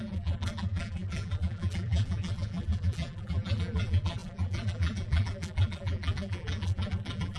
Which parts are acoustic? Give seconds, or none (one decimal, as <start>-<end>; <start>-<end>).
none